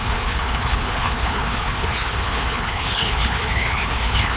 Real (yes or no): no